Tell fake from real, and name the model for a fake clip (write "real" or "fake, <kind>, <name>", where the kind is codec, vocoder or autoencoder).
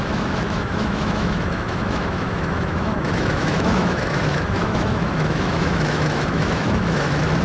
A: fake, autoencoder, DAC-VAE